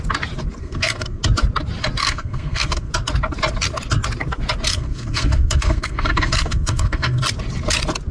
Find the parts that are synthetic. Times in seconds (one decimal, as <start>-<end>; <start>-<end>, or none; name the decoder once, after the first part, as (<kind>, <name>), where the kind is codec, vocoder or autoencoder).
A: 0.6-1.2 (codec, SNAC); 2.0-2.9; 4.7-7.2